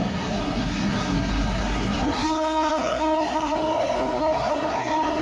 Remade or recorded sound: remade